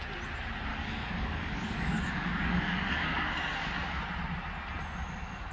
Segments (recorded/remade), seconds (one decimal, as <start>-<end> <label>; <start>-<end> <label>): 0.0-0.7 recorded; 0.7-4.0 remade; 4.0-5.5 recorded